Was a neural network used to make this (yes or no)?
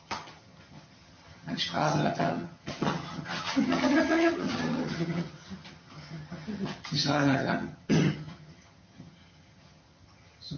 yes